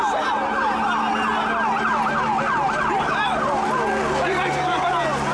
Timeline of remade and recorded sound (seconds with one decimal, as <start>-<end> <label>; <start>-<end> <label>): 0.0-5.3 recorded